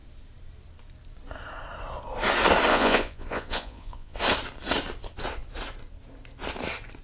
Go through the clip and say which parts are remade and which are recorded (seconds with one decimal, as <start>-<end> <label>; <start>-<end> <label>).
0.0-2.7 recorded; 2.7-4.2 remade; 4.2-7.0 recorded